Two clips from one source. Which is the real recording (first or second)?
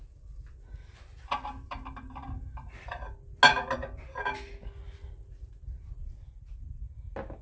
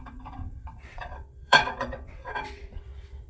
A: first